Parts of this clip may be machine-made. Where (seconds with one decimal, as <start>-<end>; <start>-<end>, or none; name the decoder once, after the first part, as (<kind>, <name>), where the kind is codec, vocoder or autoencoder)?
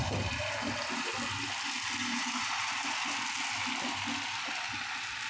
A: 0.0-1.1 (vocoder, BigVGAN v2)